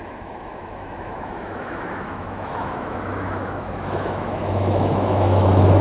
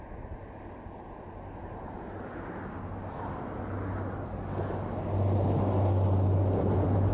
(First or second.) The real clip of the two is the second